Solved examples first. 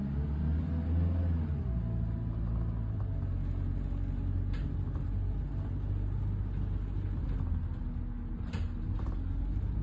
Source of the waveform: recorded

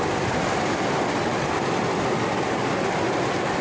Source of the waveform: recorded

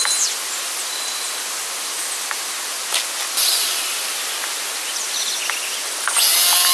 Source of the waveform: recorded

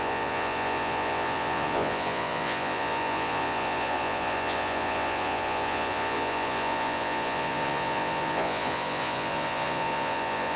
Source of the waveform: remade